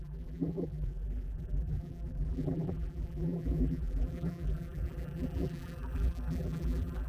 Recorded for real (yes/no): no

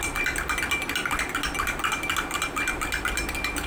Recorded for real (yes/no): yes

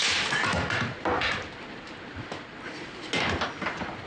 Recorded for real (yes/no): yes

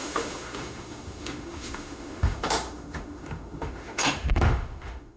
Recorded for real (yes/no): no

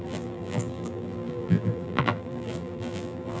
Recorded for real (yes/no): no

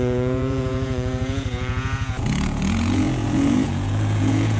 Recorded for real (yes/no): no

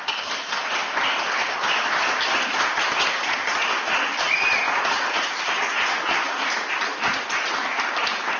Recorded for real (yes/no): yes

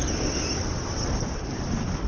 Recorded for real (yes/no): no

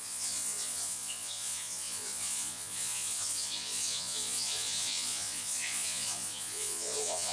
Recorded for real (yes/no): no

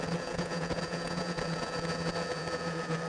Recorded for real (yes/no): no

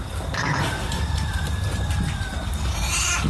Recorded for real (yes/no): yes